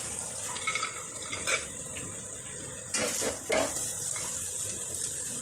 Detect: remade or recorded recorded